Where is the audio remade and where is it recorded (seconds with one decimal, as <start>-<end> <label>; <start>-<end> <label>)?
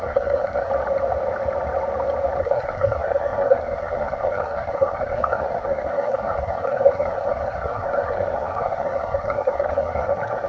0.0-0.7 remade; 0.7-2.4 recorded; 2.4-10.5 remade